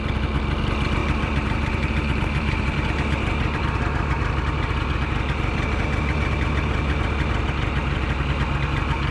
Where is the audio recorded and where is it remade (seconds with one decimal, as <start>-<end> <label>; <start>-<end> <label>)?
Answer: 0.0-1.0 recorded; 1.0-3.6 remade; 3.6-9.1 recorded